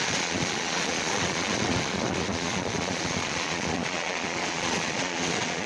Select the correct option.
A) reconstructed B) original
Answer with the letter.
A